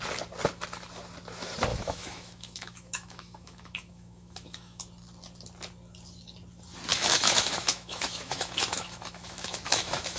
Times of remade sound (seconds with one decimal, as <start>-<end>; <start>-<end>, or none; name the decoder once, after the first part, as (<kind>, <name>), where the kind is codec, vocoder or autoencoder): 1.7-4.8 (autoencoder, DAC-VAE); 6.9-10.2